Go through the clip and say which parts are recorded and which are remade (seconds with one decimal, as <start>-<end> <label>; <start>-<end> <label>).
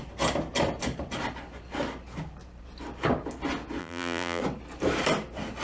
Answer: 0.0-3.8 recorded; 3.8-4.4 remade; 4.4-5.6 recorded